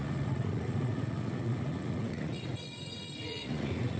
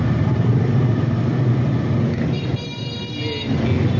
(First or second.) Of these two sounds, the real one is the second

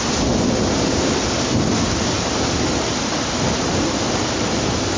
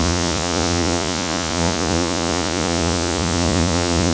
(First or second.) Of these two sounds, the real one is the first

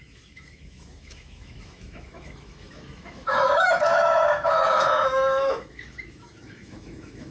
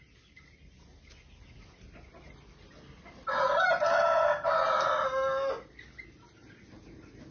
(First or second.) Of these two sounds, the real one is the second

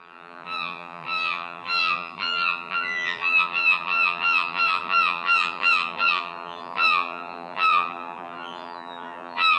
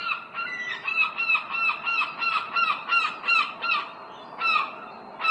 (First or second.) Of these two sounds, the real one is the second